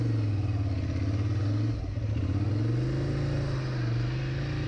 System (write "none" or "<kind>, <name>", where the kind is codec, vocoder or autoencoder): none